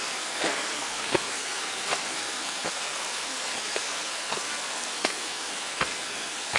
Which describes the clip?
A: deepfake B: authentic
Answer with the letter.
A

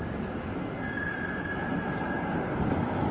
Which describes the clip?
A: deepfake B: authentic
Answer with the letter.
B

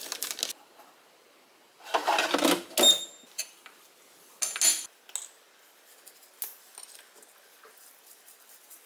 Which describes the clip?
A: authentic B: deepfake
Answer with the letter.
A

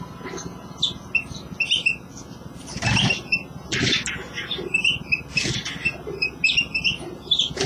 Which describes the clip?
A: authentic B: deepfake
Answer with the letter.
A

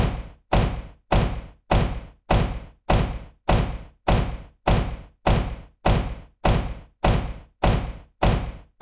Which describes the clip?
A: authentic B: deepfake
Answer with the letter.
A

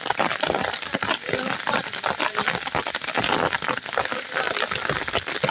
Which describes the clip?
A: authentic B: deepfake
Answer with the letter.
A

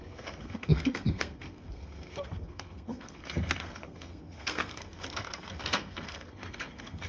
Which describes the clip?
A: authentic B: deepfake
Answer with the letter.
B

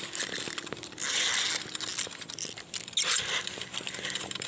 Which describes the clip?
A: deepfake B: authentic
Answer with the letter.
B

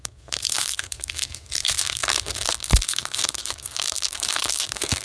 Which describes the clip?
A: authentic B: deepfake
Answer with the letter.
B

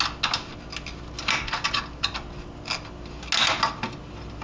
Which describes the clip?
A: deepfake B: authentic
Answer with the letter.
B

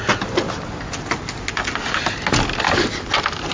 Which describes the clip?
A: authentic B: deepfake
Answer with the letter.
A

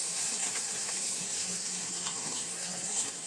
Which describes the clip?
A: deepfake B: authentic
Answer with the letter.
A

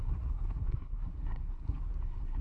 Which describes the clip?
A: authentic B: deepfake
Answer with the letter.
B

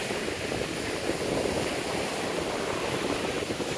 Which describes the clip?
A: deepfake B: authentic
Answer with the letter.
B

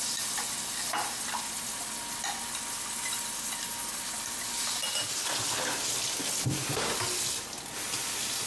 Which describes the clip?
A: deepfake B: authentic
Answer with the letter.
B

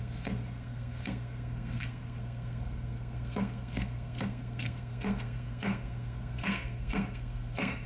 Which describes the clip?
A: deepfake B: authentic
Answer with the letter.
A